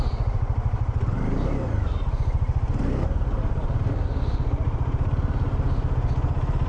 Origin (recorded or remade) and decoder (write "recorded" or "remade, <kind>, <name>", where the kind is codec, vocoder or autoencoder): remade, vocoder, BigVGAN v2